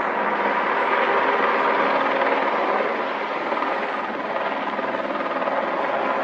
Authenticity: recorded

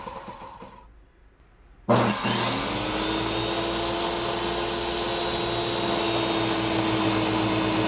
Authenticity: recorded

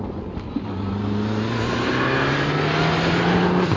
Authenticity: recorded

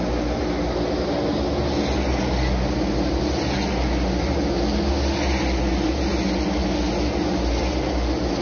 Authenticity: recorded